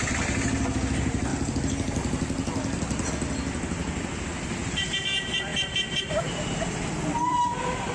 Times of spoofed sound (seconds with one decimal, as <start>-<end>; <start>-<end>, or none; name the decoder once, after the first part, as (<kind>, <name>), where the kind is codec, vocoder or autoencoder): 1.3-3.1 (vocoder, BigVGAN v2); 3.9-4.5; 5.5-6.2